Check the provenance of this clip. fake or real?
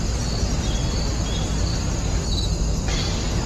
real